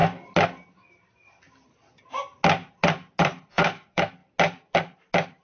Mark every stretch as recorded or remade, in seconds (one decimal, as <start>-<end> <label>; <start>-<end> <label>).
0.0-3.2 recorded; 3.2-4.2 remade; 4.2-4.7 recorded; 4.7-5.4 remade